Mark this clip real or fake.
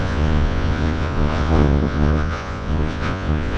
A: fake